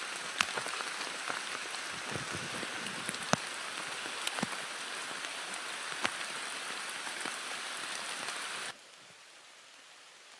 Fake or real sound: real